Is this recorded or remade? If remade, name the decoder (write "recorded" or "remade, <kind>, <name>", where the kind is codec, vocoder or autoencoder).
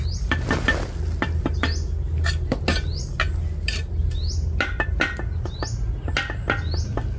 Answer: recorded